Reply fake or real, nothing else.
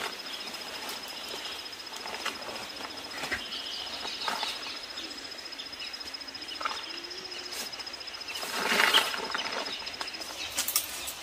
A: real